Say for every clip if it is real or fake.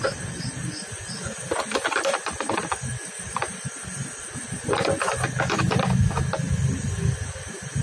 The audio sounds real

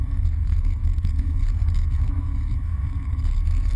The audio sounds fake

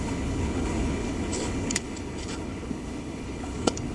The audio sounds fake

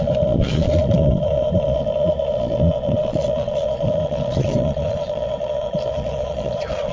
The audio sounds fake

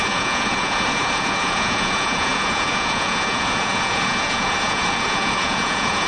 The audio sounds fake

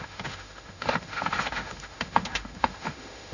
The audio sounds fake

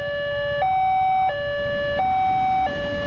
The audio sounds real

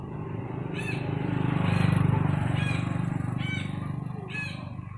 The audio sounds real